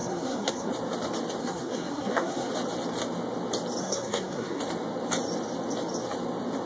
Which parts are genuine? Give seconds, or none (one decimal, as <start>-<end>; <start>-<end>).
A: 0.7-1.4; 2.5-3.8; 4.6-6.7